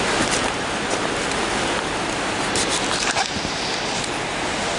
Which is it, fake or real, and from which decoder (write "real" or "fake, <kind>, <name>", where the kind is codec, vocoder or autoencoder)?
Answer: fake, vocoder, BigVGAN v2